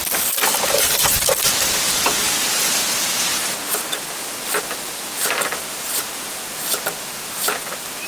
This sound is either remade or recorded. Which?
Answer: recorded